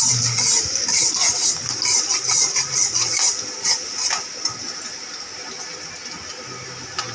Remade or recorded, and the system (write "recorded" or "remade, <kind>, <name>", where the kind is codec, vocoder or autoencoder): recorded